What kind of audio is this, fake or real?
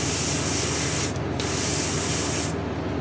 real